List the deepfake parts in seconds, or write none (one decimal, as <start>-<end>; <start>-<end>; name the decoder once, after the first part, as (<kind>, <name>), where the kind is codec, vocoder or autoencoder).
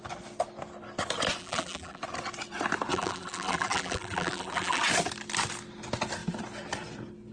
1.4-2.0 (vocoder, BigVGAN v2); 2.9-4.8